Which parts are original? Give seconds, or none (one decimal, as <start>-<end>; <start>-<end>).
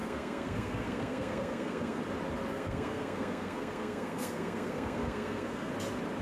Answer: 2.0-2.5; 5.7-6.2